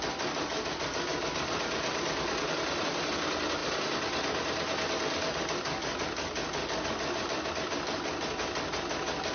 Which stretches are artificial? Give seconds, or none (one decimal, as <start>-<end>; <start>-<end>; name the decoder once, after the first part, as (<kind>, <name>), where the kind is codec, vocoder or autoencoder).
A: none